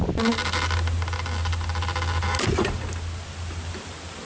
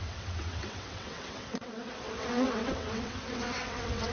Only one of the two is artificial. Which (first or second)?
second